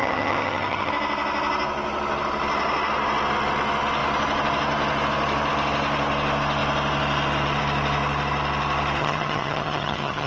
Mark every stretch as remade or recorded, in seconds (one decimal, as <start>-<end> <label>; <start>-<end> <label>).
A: 0.0-0.9 remade; 0.9-9.0 recorded; 9.0-10.3 remade